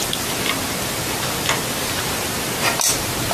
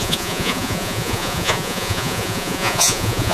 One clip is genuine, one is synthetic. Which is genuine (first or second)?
first